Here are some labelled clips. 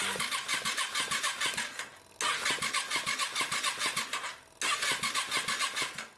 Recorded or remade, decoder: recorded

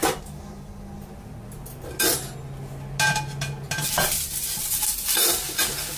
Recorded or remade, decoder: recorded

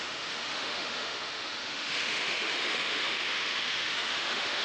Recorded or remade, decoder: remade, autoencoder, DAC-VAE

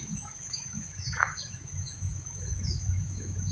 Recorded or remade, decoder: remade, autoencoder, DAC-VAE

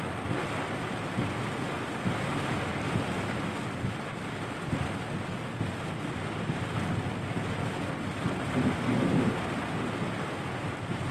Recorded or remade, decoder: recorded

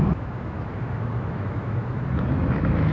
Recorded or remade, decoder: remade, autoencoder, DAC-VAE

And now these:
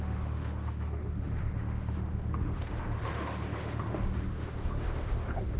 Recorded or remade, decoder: remade, autoencoder, DAC-VAE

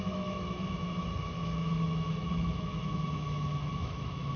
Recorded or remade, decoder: remade, autoencoder, DAC-VAE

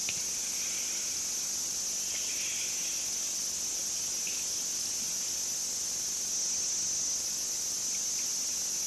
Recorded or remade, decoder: recorded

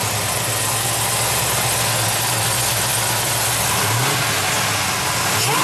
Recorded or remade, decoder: recorded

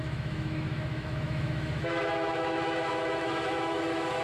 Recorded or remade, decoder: remade, autoencoder, DAC-VAE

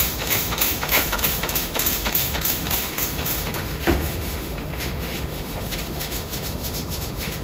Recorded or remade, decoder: remade, autoencoder, DAC-VAE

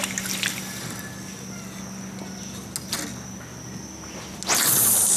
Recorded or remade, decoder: recorded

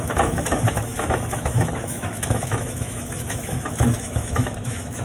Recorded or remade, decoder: remade, autoencoder, DAC-VAE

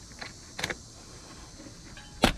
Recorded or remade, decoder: recorded